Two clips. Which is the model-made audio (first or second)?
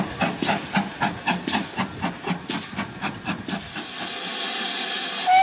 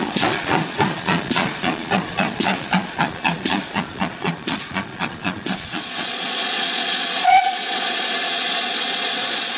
second